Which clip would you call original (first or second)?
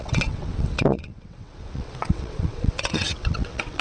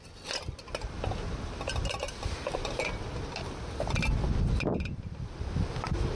second